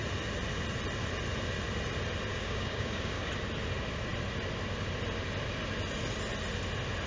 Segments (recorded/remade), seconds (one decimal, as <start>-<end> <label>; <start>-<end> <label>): 0.0-2.3 recorded; 2.3-3.3 remade; 3.3-7.1 recorded